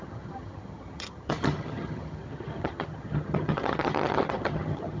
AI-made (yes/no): yes